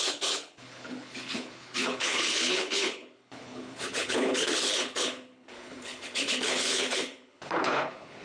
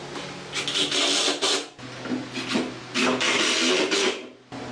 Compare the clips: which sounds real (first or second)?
second